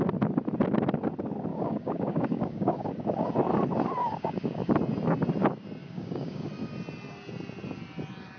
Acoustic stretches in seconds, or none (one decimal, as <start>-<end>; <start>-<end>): 0.0-1.5; 2.9-4.0; 4.7-5.8; 6.5-8.4